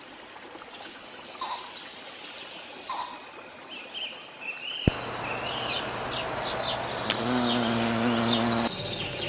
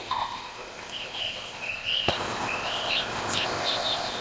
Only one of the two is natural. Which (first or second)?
first